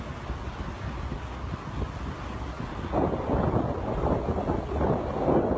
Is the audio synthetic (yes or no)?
no